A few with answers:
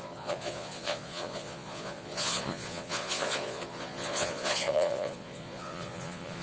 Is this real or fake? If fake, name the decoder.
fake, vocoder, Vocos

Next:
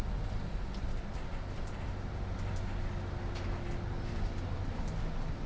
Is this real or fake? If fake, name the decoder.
real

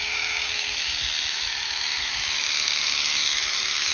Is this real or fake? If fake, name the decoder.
fake, autoencoder, DAC-VAE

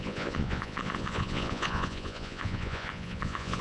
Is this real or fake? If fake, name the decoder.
fake, vocoder, Vocos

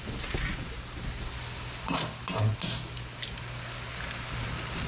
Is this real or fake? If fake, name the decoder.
real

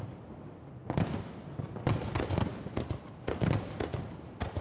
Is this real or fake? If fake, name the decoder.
real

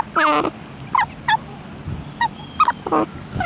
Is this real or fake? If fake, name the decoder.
real